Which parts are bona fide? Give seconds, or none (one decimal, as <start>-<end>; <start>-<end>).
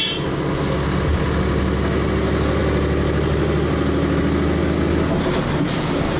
0.0-6.2